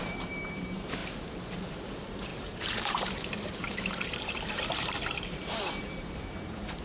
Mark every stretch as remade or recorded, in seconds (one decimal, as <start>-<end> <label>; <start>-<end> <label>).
0.0-1.0 remade; 1.0-1.6 recorded; 1.6-6.8 remade

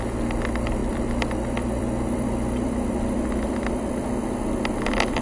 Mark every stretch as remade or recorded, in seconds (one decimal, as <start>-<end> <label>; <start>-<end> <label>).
0.0-0.8 recorded; 0.8-3.9 remade; 3.9-5.2 recorded

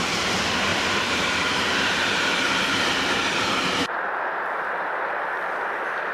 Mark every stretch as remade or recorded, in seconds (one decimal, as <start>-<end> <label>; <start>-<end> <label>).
0.0-0.7 recorded; 0.7-4.4 remade; 4.4-6.1 recorded

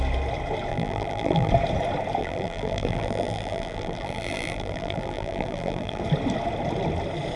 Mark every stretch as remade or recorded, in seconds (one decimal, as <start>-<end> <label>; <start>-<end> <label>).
0.0-0.7 recorded; 0.7-1.5 remade; 1.5-2.2 recorded; 2.2-6.0 remade; 6.0-7.4 recorded